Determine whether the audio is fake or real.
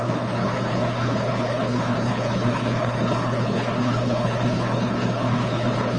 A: fake